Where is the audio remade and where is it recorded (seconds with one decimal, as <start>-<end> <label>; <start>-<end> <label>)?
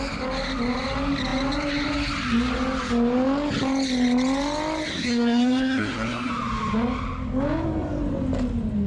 0.0-4.9 recorded; 4.9-6.3 remade; 6.3-8.9 recorded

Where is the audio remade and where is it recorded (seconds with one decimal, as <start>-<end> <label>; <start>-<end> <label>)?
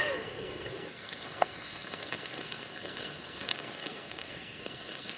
0.0-5.2 remade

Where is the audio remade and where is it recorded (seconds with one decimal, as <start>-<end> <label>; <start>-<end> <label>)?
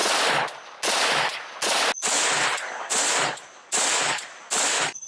0.0-5.1 recorded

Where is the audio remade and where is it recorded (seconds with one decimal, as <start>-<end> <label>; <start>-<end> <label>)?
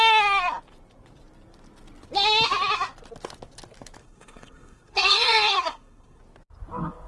0.0-4.0 recorded; 4.0-6.2 remade; 6.2-7.1 recorded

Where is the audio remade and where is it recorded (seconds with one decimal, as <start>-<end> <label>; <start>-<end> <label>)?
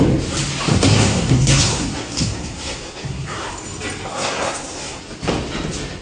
0.0-0.7 recorded; 0.7-3.5 remade; 3.5-4.1 recorded; 4.1-5.0 remade; 5.0-6.0 recorded